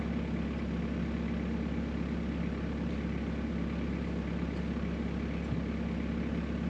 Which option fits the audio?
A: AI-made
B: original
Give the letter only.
B